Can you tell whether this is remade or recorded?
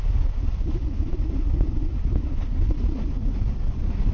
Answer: recorded